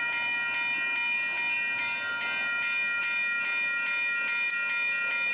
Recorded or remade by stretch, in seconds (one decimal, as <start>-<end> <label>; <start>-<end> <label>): 0.0-5.3 recorded